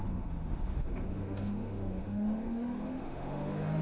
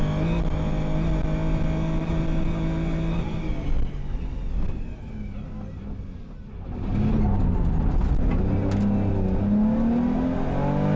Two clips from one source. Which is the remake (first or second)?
first